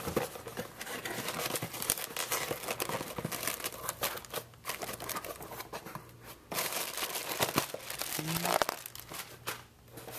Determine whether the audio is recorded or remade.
recorded